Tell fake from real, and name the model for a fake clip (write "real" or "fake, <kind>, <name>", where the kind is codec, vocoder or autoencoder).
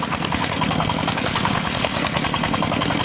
fake, codec, SNAC